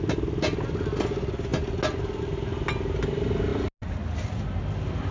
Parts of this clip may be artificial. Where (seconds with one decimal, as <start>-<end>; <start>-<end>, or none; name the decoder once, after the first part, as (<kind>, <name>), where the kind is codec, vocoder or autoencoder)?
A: none